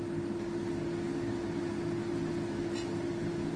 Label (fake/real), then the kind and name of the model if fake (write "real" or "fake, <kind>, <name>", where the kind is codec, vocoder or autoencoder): real